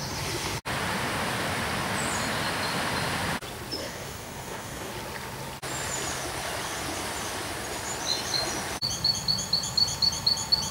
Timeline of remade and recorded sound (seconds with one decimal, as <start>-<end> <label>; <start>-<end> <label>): 0.0-3.8 recorded; 3.8-4.9 remade; 4.9-10.7 recorded